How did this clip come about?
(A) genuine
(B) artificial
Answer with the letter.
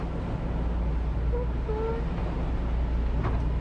A